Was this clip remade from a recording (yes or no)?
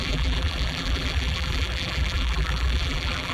yes